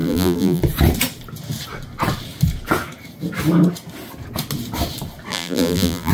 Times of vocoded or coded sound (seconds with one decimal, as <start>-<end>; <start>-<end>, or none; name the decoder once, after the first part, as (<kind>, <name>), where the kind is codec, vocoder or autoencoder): 0.0-0.6 (vocoder, BigVGAN v2); 5.3-6.1